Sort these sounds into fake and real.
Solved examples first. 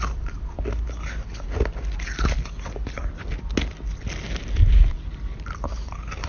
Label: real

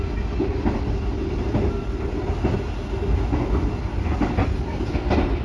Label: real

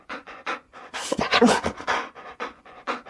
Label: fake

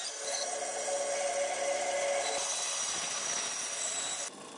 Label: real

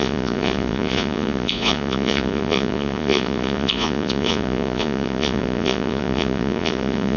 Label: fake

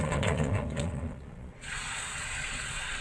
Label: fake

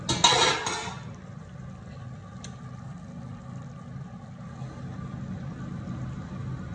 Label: real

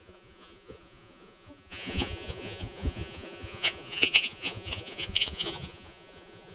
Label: fake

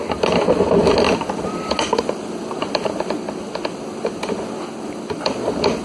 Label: real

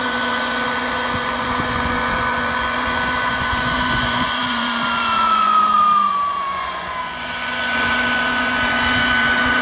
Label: fake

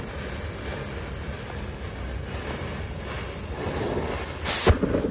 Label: real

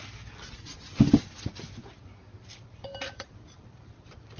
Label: real